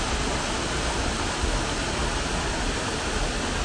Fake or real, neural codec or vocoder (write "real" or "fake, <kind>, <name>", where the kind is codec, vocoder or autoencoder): real